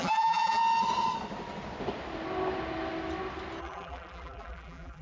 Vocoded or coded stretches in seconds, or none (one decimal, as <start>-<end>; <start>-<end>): 0.0-0.6; 3.6-5.0